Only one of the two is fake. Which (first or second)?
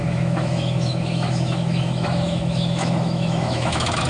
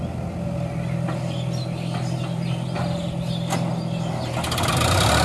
first